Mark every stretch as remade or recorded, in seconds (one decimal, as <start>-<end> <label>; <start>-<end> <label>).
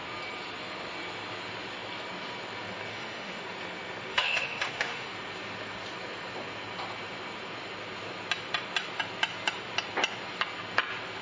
0.0-2.9 recorded; 2.9-3.4 remade; 3.4-4.1 recorded; 4.1-5.1 remade; 5.1-11.2 recorded